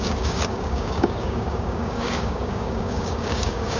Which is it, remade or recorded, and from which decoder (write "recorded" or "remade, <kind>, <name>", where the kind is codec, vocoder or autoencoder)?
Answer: remade, codec, DAC